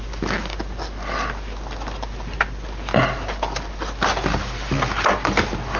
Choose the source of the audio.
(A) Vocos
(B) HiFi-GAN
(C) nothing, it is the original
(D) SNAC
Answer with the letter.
C